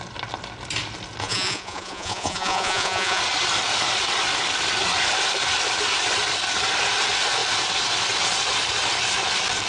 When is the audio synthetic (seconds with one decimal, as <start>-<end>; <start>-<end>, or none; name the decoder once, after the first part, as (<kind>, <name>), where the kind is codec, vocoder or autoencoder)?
1.2-3.2 (vocoder, Vocos)